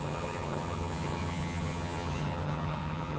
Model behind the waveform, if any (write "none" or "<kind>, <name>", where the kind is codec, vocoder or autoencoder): vocoder, HiFi-GAN